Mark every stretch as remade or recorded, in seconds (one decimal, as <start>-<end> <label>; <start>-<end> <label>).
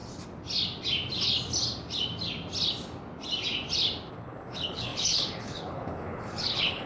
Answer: 0.0-4.1 recorded; 4.1-6.9 remade